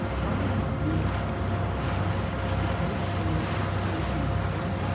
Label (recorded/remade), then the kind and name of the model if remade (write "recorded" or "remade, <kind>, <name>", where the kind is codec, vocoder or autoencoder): recorded